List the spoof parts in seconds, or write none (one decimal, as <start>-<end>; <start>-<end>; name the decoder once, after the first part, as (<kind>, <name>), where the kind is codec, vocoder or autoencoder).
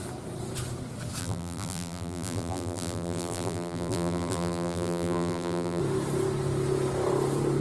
1.2-5.8 (vocoder, BigVGAN v2)